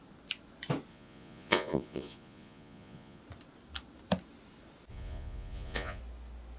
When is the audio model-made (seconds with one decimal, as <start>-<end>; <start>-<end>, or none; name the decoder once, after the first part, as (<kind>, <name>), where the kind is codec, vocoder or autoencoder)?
0.9-3.2 (vocoder, Vocos); 4.9-6.0